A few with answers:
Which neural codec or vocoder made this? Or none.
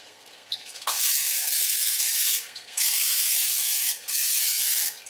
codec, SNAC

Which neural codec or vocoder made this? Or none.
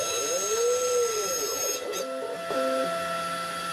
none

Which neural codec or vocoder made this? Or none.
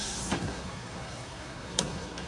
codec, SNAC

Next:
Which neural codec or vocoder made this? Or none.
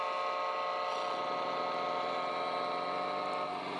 none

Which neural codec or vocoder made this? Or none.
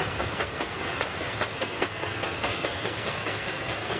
codec, SNAC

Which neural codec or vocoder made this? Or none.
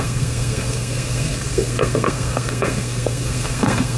codec, SNAC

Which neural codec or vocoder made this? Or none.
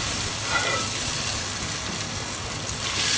none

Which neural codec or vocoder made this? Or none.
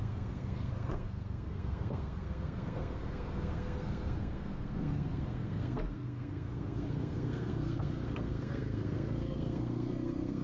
codec, SNAC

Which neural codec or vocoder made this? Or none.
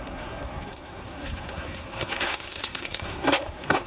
codec, SNAC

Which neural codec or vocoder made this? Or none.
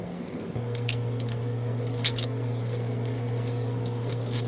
codec, SNAC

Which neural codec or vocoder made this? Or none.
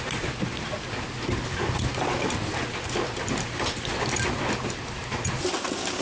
none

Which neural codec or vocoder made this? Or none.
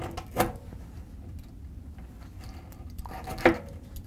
none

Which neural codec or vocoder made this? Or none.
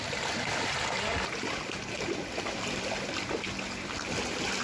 none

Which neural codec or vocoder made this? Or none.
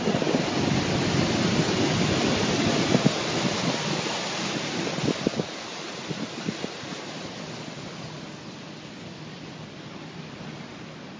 none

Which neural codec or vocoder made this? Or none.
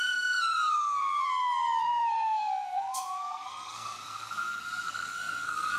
codec, SNAC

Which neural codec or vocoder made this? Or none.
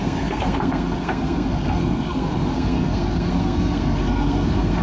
codec, SNAC